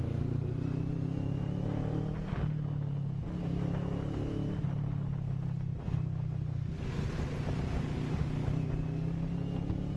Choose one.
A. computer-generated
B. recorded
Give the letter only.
B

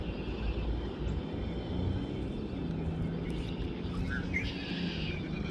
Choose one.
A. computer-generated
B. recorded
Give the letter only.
B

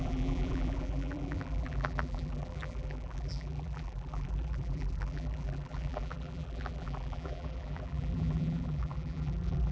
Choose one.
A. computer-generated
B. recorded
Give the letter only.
A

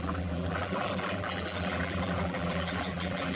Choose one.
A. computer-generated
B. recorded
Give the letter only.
A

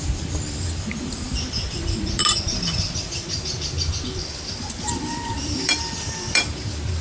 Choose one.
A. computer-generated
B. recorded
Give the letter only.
A